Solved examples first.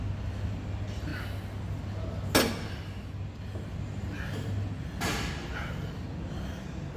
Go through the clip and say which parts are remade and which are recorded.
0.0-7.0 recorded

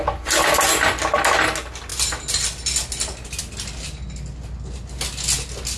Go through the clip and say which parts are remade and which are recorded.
0.0-5.8 recorded

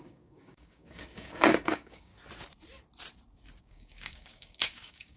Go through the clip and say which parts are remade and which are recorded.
0.0-2.1 remade; 2.1-3.6 recorded; 3.6-5.2 remade

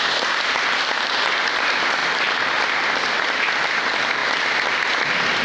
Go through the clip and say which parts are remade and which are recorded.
0.0-5.4 recorded

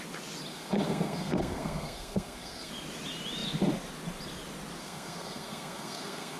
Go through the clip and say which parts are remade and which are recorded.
0.0-0.5 recorded; 0.5-2.7 remade; 2.7-4.8 recorded; 4.8-6.4 remade

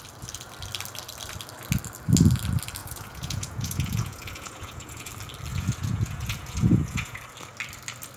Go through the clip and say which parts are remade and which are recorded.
0.0-2.8 recorded; 2.8-5.1 remade; 5.1-5.5 recorded; 5.5-7.2 remade; 7.2-8.2 recorded